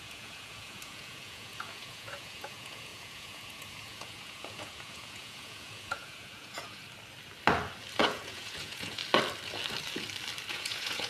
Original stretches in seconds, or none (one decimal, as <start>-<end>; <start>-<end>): 6.8-8.0; 9.0-10.5